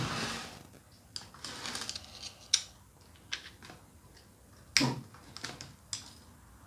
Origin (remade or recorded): recorded